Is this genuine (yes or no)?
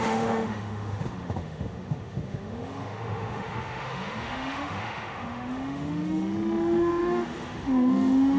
no